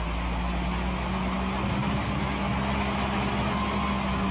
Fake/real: real